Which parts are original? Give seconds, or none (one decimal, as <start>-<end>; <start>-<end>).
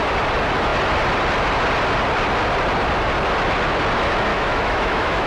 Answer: 0.0-4.3